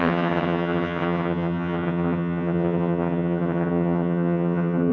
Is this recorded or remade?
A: remade